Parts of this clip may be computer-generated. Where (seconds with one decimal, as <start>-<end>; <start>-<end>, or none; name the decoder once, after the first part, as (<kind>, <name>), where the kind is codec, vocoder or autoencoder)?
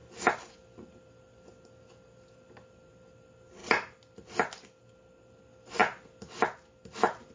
none